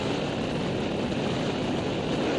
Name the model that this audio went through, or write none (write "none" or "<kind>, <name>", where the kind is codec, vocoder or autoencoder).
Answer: none